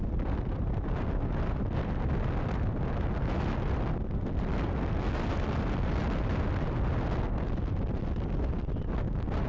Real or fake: real